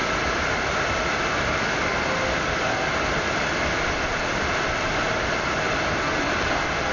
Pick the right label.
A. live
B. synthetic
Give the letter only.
A